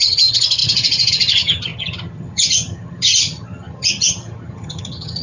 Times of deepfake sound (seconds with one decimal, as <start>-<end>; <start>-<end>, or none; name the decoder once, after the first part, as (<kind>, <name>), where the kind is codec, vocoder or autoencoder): 0.0-5.2 (vocoder, HiFi-GAN)